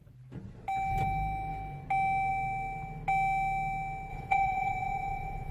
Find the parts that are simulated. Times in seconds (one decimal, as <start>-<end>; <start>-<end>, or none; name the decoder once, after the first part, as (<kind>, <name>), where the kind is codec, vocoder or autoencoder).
4.1-5.5 (vocoder, Vocos)